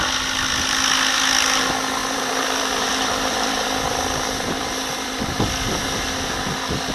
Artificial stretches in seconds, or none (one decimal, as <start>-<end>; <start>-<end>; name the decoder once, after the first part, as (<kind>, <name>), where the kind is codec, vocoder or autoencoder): 2.0-5.2 (vocoder, BigVGAN v2)